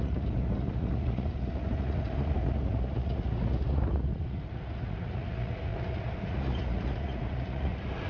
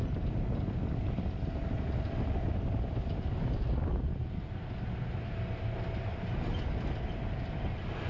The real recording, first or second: second